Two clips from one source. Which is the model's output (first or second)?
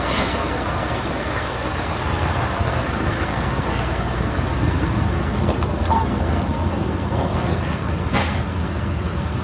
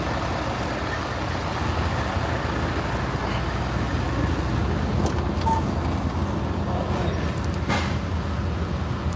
first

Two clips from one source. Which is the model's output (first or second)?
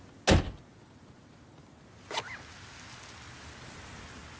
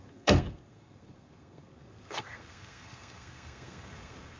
second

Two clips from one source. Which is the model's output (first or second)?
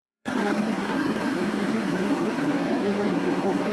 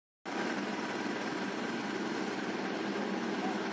first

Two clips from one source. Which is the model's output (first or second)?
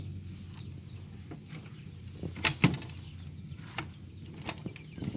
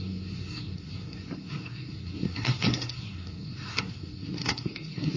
second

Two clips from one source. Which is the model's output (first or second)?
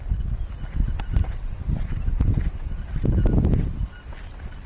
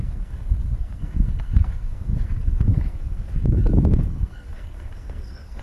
second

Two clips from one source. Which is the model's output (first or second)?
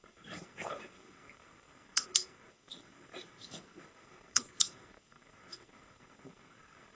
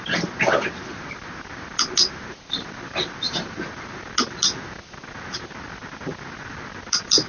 first